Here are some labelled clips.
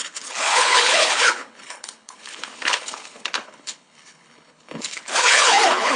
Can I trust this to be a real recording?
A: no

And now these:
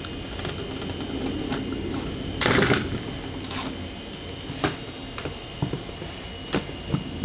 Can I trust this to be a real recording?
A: yes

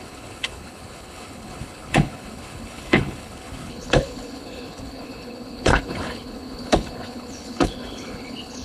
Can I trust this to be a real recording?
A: no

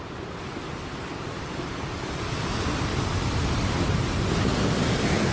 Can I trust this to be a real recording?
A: yes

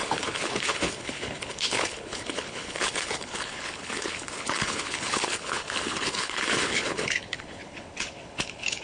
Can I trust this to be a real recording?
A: no